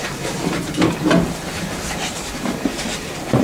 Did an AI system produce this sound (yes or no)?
yes